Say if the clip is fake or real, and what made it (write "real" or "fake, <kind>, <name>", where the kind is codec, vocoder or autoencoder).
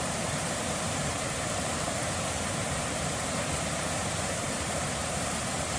fake, vocoder, BigVGAN v2